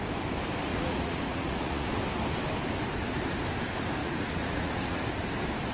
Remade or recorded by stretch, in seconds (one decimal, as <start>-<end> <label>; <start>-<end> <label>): 0.0-0.7 recorded; 0.7-1.9 remade; 1.9-4.0 recorded; 4.0-5.0 remade; 5.0-5.7 recorded